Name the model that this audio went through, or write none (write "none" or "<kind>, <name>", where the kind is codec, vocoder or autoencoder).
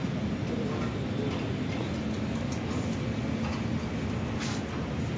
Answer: none